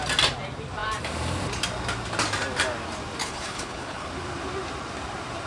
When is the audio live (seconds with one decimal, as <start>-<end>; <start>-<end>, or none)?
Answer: 0.0-3.2; 4.1-5.5

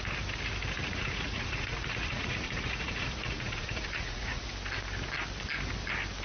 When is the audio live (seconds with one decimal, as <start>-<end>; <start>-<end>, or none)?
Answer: 0.0-0.8; 4.5-6.2

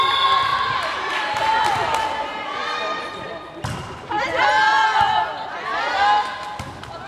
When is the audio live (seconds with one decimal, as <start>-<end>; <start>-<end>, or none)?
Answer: 0.0-0.5; 1.1-7.1

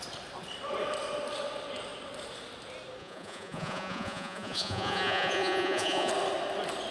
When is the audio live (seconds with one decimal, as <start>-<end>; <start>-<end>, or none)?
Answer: 0.0-3.0; 6.1-6.9

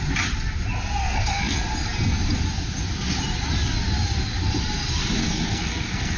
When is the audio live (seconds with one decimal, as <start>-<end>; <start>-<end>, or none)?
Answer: 0.0-1.0; 1.6-5.2

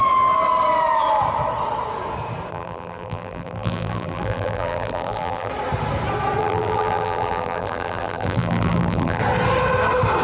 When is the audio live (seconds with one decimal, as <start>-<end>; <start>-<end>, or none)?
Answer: 0.0-2.5; 5.5-6.4; 9.2-10.2

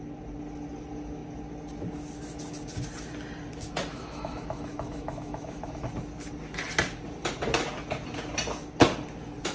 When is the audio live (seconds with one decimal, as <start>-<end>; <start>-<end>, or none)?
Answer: 0.0-3.9; 5.9-9.5